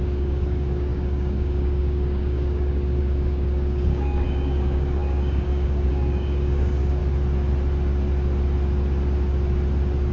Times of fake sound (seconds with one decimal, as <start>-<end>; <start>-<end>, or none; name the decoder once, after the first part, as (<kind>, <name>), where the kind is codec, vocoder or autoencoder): 0.0-7.0 (codec, DAC)